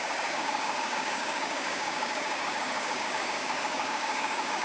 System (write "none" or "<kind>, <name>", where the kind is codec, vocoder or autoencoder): codec, DAC